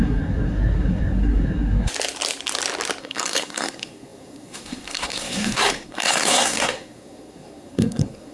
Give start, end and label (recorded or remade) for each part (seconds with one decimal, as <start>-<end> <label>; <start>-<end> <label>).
0.0-1.9 remade; 1.9-3.0 recorded; 3.0-8.3 remade